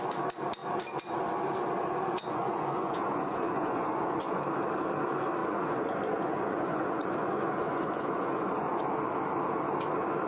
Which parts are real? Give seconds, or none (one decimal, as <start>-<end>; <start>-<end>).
0.0-2.2; 4.4-5.4; 8.8-10.3